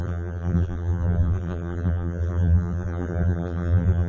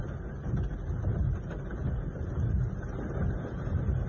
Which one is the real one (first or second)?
second